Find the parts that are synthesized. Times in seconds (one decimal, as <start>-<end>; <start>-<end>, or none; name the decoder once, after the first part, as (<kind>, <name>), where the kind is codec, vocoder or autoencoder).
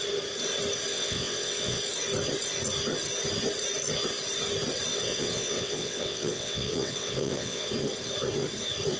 0.9-1.8 (vocoder, WaveNeXt); 4.9-7.7